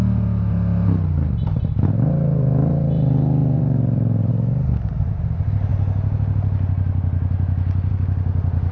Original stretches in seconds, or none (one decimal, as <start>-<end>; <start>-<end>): 0.0-3.4; 4.3-8.7